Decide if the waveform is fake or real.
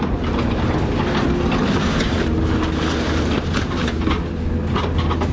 real